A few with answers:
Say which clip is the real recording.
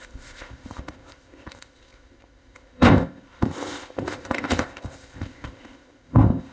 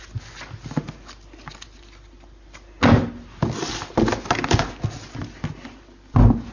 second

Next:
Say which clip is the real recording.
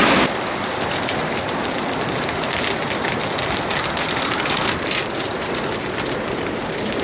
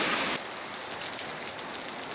second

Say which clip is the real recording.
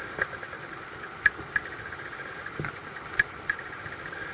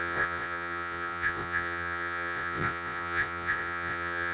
first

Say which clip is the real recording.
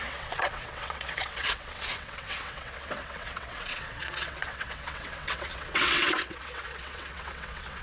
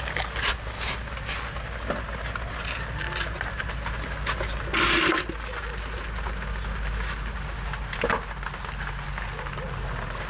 second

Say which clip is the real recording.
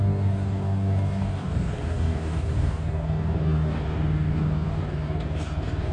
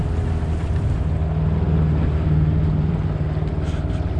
second